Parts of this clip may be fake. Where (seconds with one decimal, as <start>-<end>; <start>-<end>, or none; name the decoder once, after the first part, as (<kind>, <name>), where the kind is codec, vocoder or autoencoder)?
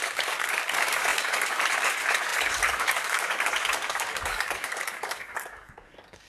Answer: 0.0-6.3 (codec, DAC)